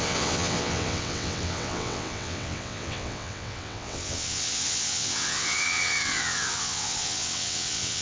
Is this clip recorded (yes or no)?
no